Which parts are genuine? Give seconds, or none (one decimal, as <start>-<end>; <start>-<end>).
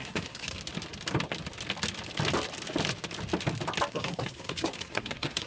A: 0.6-3.9